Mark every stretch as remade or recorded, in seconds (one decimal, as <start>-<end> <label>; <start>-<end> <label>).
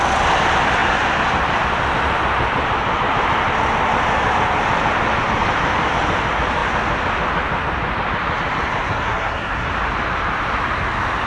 0.0-8.9 recorded; 8.9-9.7 remade; 9.7-11.3 recorded